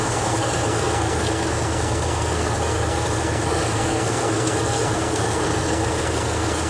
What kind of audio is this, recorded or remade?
remade